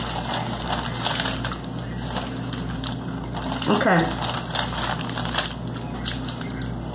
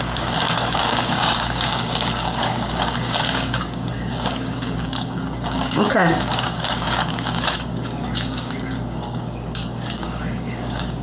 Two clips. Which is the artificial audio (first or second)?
second